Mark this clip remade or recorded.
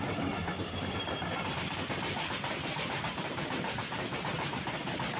remade